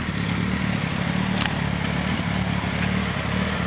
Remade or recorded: recorded